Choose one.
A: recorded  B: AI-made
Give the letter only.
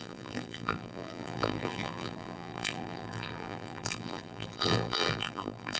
B